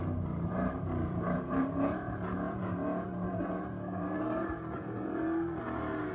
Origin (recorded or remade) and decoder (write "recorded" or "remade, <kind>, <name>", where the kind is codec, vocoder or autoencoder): remade, vocoder, BigVGAN v2